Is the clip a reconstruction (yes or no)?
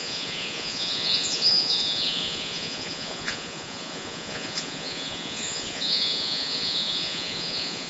yes